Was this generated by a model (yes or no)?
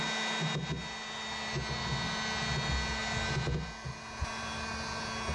no